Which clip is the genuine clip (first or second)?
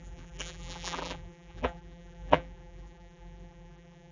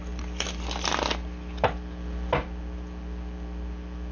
second